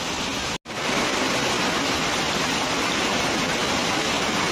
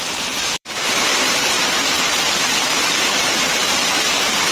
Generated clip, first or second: second